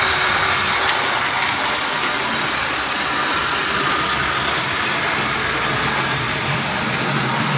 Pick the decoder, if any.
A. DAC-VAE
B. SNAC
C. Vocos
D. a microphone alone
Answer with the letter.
D